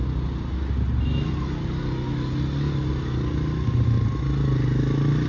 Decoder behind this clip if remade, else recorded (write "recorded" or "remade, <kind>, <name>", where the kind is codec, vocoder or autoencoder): recorded